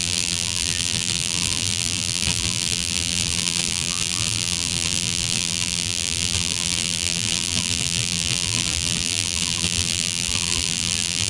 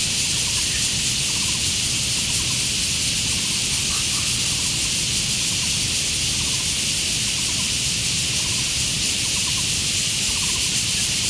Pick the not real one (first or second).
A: first